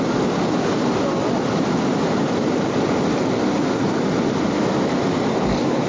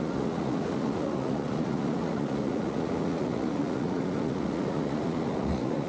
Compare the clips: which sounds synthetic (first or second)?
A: second